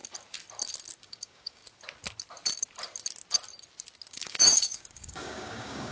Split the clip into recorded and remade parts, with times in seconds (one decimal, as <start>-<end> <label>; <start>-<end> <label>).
0.0-1.0 recorded; 1.0-1.6 remade; 1.6-4.1 recorded; 4.1-5.9 remade